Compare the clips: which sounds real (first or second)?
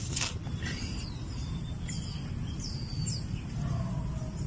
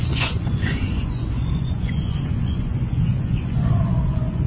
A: first